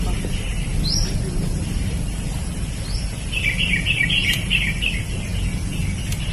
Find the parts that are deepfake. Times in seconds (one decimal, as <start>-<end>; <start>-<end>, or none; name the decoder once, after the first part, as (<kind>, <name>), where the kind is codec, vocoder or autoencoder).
0.0-5.3 (vocoder, BigVGAN v2)